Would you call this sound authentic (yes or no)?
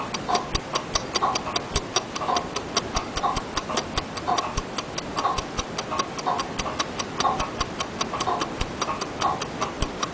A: yes